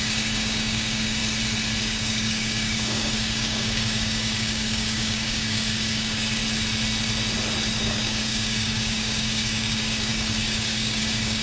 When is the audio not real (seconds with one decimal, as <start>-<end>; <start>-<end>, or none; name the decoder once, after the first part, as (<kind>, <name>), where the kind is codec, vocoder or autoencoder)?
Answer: 0.0-1.2 (codec, DAC); 1.8-6.4; 7.8-11.4